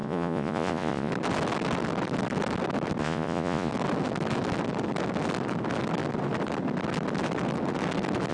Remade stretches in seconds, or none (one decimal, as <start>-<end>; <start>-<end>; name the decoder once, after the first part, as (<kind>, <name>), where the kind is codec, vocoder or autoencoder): 0.0-1.1 (vocoder, Vocos); 3.0-3.7